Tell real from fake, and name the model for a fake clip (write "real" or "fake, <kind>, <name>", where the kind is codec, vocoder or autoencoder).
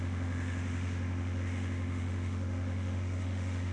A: fake, autoencoder, DAC-VAE